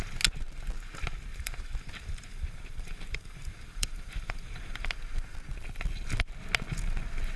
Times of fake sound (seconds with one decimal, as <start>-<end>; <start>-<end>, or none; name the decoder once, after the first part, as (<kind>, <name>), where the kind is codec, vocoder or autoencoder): 1.3-4.9 (vocoder, BigVGAN v2)